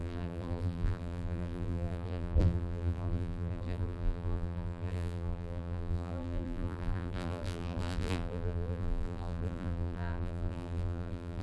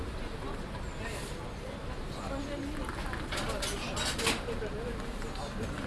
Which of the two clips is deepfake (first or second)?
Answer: first